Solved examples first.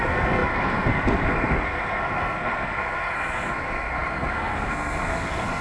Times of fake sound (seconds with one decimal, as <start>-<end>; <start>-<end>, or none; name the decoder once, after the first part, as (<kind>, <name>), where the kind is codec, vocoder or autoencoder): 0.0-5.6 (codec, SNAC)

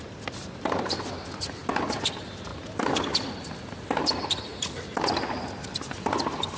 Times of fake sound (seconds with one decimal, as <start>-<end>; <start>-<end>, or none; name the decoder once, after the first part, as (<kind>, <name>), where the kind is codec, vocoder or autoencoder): 2.5-3.3 (vocoder, BigVGAN v2); 4.5-5.1

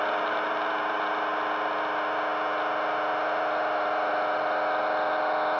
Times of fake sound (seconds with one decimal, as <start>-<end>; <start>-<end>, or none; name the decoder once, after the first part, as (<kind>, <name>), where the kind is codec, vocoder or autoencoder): none

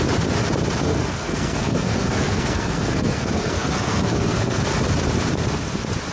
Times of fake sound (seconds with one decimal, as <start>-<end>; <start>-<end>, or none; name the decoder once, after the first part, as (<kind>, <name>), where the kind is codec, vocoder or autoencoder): 0.9-4.6 (codec, SNAC)

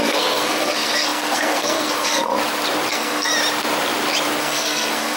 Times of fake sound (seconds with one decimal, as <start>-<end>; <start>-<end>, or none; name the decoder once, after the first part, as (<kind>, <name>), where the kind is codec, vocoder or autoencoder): 0.0-2.3 (codec, SNAC); 2.9-3.3; 4.4-5.2

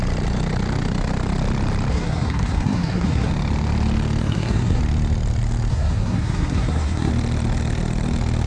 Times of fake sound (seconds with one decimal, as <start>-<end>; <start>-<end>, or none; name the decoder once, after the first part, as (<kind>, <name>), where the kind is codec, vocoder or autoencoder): 1.9-3.3 (codec, SNAC); 4.2-4.8; 5.7-7.1